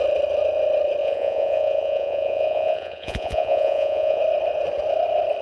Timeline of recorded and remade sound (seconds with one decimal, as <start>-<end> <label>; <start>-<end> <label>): 0.0-1.0 recorded; 1.0-4.2 remade; 4.2-5.4 recorded